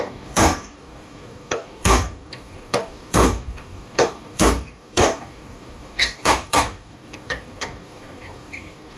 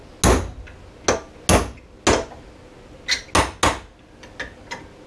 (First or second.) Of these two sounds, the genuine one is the second